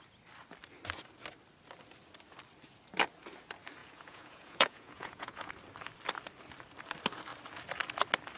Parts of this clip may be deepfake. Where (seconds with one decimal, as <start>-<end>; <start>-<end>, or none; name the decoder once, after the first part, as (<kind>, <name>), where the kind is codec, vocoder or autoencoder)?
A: 3.8-5.5 (vocoder, Vocos)